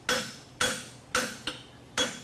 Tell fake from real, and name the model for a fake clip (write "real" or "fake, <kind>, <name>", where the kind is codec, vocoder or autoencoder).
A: real